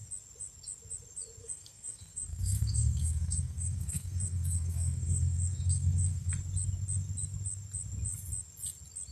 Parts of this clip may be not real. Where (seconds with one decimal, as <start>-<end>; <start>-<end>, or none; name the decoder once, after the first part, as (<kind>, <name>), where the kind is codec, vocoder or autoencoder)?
1.4-6.3 (codec, SNAC)